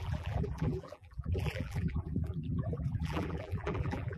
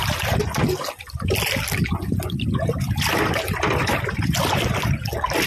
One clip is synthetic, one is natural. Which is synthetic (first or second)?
first